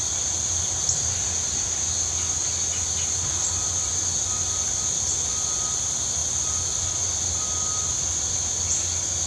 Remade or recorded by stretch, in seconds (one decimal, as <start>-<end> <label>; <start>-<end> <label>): 0.0-9.3 recorded